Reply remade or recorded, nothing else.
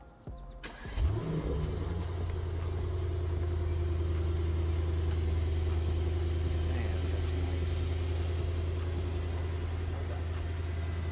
recorded